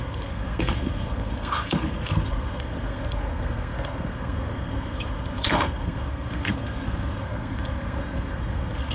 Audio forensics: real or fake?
fake